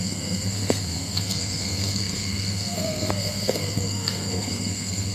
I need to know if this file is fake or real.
fake